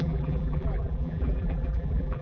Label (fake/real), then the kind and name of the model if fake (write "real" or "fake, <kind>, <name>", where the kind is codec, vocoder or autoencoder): fake, vocoder, BigVGAN v2